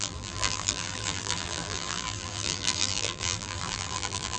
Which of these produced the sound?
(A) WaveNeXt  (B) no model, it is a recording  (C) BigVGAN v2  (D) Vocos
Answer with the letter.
C